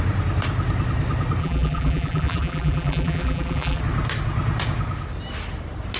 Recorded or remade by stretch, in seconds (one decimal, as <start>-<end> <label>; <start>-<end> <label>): 0.0-1.4 recorded; 1.4-3.8 remade; 3.8-6.0 recorded